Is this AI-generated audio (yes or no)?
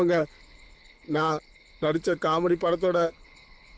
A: yes